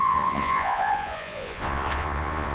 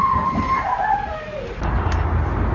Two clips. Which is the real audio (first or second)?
second